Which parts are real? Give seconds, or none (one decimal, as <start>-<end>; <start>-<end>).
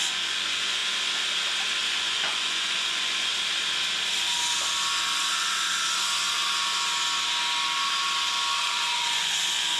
0.8-1.9; 3.3-8.6